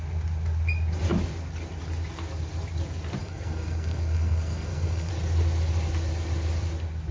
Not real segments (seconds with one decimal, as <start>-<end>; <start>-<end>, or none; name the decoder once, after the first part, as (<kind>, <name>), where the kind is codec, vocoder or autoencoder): 3.2-5.1 (codec, SNAC)